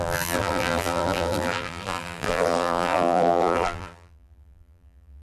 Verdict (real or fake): fake